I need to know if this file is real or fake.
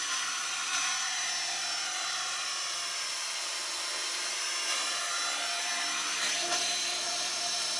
real